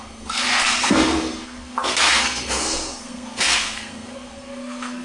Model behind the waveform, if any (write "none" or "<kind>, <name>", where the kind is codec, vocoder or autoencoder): codec, SNAC